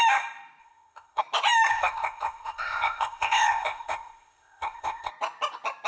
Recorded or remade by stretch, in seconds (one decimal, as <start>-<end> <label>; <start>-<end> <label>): 0.0-0.6 recorded; 0.6-1.2 remade; 1.2-1.7 recorded; 1.7-5.1 remade; 5.1-5.9 recorded